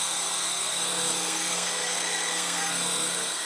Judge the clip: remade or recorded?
remade